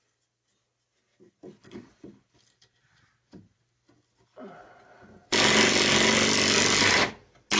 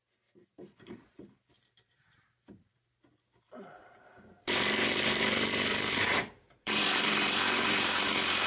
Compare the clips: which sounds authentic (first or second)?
first